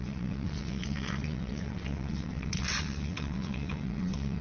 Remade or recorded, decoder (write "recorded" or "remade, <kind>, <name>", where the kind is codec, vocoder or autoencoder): remade, vocoder, WaveNeXt